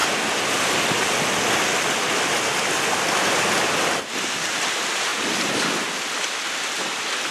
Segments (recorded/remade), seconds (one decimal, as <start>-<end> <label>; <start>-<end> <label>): 0.0-7.3 recorded

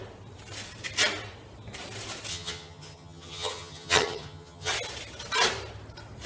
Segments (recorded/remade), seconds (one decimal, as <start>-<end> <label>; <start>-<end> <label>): 0.0-2.3 recorded; 2.3-4.7 remade; 4.7-6.3 recorded

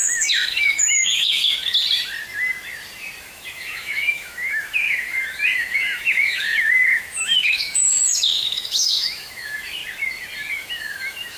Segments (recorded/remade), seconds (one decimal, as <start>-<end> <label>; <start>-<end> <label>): 0.0-1.8 remade; 1.8-3.2 recorded; 3.2-9.8 remade; 9.8-10.5 recorded; 10.5-11.4 remade

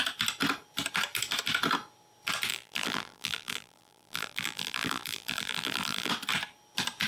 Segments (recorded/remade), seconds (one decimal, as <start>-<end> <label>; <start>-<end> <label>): 0.0-2.5 recorded; 2.5-6.1 remade; 6.1-7.1 recorded

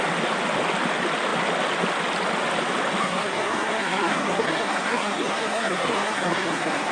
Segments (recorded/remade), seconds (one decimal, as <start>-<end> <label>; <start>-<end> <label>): 0.0-3.0 recorded; 3.0-6.9 remade

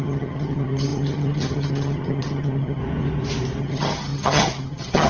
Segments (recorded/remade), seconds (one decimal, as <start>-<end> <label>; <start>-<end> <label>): 0.0-2.8 remade; 2.8-3.6 recorded; 3.6-5.1 remade

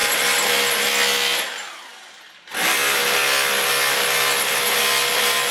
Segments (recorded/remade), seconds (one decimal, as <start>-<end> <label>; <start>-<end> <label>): 0.0-5.5 recorded

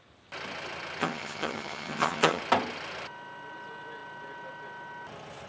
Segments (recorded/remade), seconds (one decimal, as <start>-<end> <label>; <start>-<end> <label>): 0.0-1.0 recorded; 1.0-2.4 remade; 2.4-5.5 recorded